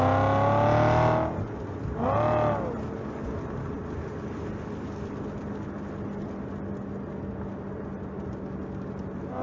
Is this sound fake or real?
real